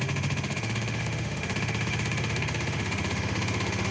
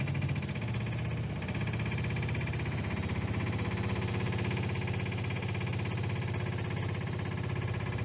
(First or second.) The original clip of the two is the second